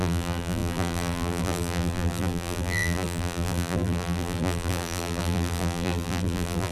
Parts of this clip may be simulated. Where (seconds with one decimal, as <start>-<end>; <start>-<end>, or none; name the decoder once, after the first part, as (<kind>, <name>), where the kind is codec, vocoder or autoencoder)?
0.0-6.7 (vocoder, BigVGAN v2)